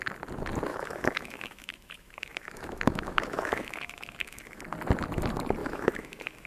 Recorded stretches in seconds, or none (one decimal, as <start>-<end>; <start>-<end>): 0.0-0.7; 4.6-5.6